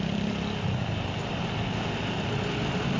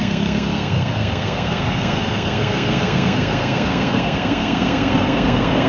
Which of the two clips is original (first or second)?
first